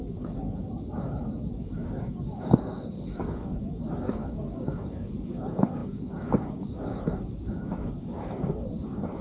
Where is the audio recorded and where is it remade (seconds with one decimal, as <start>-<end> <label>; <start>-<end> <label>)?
0.0-9.2 remade